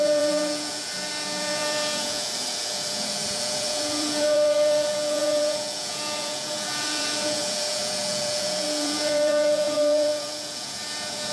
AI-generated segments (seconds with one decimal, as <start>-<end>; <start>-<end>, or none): 0.0-11.3